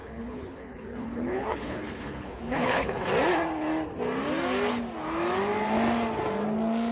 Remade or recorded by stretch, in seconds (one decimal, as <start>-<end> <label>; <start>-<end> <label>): 0.0-3.1 remade; 3.1-6.9 recorded

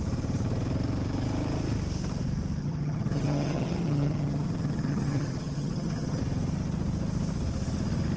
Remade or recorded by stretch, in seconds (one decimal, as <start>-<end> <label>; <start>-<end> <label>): 0.0-2.6 recorded; 2.6-6.2 remade; 6.2-8.2 recorded

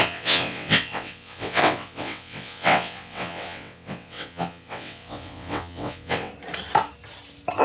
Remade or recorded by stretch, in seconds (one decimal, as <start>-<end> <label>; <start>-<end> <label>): 0.0-6.3 remade; 6.3-7.6 recorded

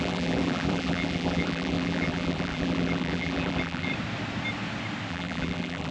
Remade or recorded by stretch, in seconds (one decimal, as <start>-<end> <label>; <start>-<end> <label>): 0.0-3.9 remade; 3.9-5.1 recorded; 5.1-5.9 remade